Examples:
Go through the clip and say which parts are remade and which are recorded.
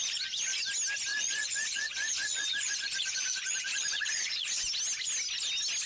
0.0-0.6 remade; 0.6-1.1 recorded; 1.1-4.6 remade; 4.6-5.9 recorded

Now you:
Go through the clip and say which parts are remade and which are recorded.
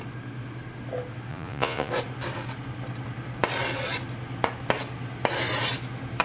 0.0-1.3 recorded; 1.3-1.9 remade; 1.9-6.2 recorded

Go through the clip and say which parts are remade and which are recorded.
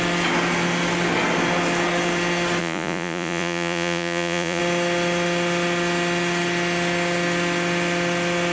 0.0-2.6 recorded; 2.6-4.6 remade; 4.6-8.5 recorded